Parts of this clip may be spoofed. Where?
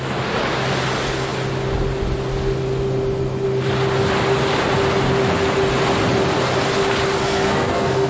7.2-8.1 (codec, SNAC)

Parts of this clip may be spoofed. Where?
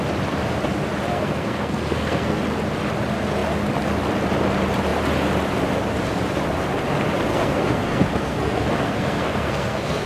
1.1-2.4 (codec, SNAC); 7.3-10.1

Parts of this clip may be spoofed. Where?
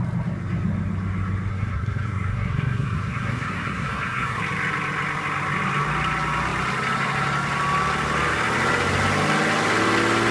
1.5-4.4 (codec, SNAC)